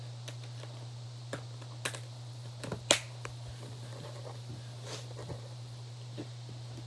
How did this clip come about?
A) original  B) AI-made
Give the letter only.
A